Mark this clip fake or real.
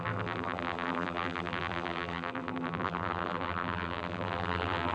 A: fake